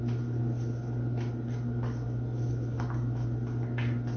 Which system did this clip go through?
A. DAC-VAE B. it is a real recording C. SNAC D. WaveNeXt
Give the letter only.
B